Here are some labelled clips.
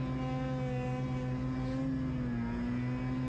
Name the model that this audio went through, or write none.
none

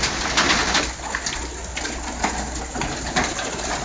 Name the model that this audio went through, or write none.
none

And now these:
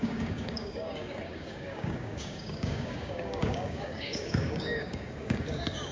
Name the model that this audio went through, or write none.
codec, DAC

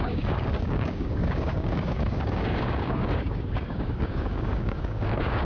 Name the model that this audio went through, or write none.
codec, DAC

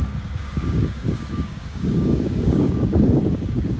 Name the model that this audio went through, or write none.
codec, DAC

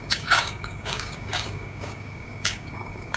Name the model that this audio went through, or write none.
codec, DAC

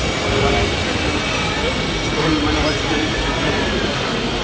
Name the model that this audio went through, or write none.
none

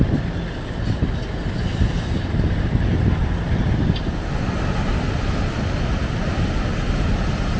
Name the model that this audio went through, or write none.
none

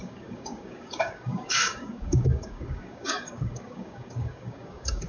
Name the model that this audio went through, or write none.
codec, DAC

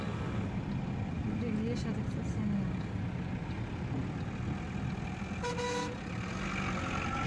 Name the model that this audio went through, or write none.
none